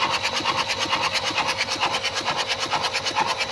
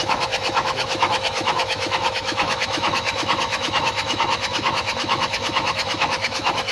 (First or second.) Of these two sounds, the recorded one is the first